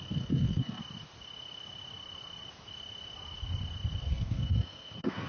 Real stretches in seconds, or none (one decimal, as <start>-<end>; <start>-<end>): 0.8-4.0